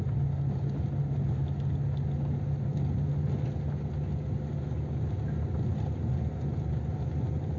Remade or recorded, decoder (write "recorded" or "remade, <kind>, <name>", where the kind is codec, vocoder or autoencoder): recorded